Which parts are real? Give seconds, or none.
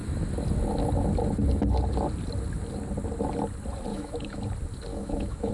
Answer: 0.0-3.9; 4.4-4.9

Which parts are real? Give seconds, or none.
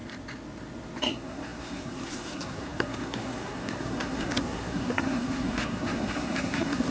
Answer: 0.0-1.0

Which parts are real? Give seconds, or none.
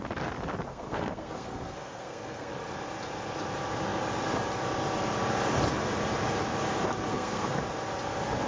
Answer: 0.0-0.7; 2.5-7.1; 7.6-8.5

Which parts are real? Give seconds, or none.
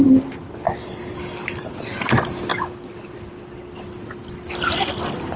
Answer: 0.0-0.8; 1.7-5.4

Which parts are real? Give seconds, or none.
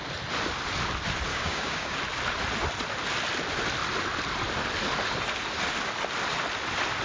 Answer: 0.0-1.3; 2.0-7.0